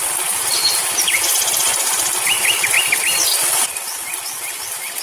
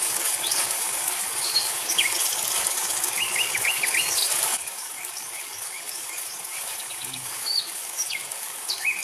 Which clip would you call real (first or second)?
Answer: first